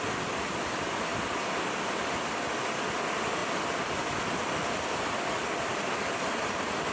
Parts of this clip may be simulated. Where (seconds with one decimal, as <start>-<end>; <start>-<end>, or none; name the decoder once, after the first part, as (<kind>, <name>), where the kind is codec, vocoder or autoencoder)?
none